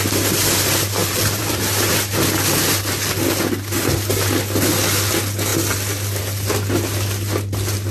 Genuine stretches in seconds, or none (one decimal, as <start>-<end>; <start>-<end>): 0.0-1.0; 1.9-7.9